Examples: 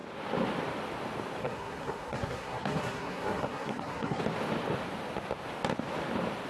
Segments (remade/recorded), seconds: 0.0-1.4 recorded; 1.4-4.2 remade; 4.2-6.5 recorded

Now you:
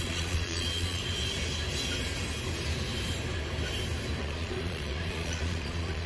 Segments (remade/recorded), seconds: 0.0-1.0 remade; 1.0-4.2 recorded; 4.2-6.1 remade

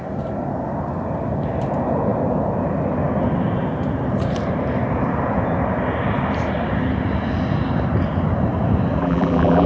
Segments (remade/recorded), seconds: 0.0-9.0 recorded; 9.0-9.7 remade

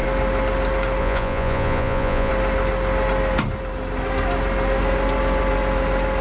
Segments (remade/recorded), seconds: 0.0-1.0 recorded; 1.0-2.3 remade; 2.3-6.2 recorded

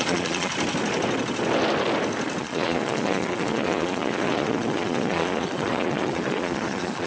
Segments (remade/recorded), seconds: 0.0-0.5 remade; 0.5-2.4 recorded; 2.4-7.1 remade